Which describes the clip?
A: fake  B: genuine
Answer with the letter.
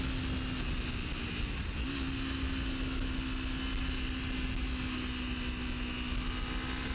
B